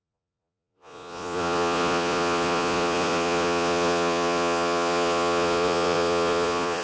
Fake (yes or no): yes